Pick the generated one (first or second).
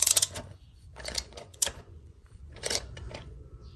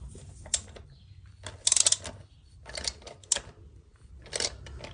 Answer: first